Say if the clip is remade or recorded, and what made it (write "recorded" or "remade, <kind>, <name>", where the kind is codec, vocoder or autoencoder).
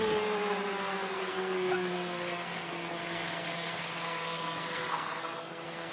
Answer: remade, codec, SNAC